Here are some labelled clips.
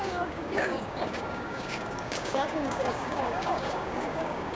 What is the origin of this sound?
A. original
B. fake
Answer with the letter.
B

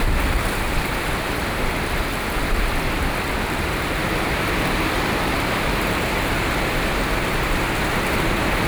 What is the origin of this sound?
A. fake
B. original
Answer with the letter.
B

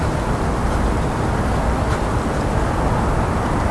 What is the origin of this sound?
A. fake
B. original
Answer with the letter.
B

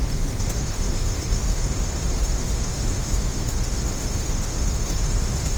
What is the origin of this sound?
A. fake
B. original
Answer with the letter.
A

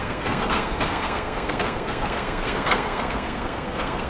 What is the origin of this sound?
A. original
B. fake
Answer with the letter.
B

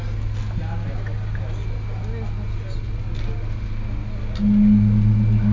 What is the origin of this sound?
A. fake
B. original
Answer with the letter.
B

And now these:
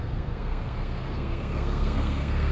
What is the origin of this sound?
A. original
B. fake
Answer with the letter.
B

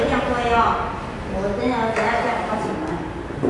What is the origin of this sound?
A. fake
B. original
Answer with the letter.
B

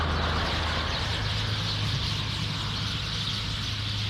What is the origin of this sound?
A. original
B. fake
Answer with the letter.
A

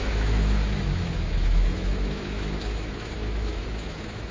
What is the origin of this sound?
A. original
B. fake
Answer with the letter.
B